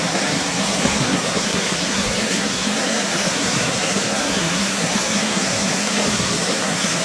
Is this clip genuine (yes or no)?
no